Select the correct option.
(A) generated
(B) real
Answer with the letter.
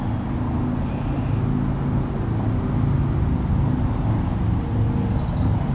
B